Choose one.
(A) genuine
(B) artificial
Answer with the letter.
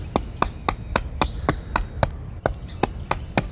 A